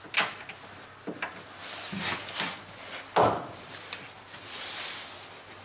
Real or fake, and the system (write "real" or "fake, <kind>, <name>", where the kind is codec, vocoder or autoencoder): real